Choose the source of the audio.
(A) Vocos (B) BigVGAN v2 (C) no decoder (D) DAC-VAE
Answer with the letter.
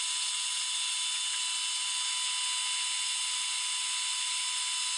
C